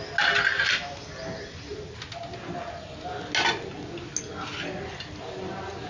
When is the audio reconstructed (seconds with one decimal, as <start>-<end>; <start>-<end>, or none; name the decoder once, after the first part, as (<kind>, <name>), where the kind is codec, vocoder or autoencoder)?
none